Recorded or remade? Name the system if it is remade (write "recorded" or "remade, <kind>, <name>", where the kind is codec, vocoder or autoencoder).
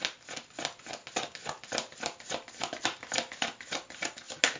recorded